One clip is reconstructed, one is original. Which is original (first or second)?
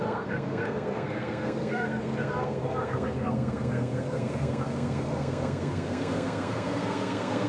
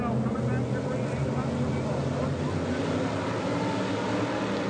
second